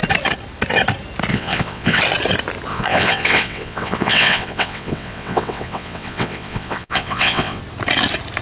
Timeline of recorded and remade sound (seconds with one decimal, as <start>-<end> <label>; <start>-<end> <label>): 0.0-1.3 recorded; 1.3-2.0 remade; 2.0-2.7 recorded; 2.7-7.6 remade; 7.6-8.4 recorded